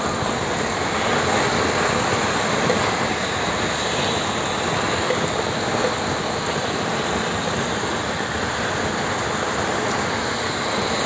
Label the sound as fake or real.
real